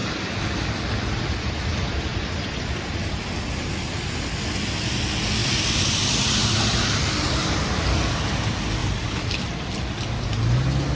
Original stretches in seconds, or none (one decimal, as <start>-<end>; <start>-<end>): 0.0-5.4; 8.0-8.8; 10.1-11.0